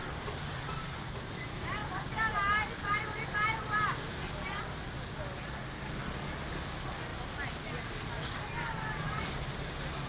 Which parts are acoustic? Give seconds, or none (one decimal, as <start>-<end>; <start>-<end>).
0.0-10.1